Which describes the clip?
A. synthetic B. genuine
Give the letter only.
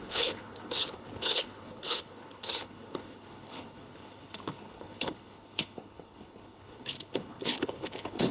A